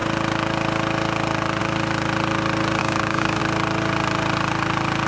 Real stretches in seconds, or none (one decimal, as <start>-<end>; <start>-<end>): 0.0-2.8; 3.4-5.1